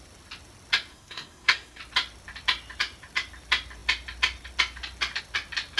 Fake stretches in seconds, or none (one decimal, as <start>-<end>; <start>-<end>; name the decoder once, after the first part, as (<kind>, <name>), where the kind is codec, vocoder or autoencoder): 0.9-1.8 (codec, SNAC)